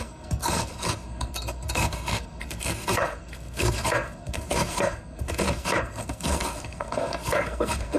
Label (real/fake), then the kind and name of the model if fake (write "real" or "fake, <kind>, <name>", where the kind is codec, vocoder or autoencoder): fake, codec, SNAC